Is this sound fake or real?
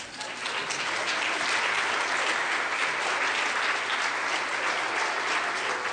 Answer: real